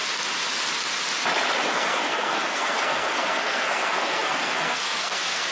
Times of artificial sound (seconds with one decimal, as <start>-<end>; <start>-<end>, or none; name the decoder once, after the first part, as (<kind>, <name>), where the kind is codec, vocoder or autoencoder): 1.6-5.5 (codec, SNAC)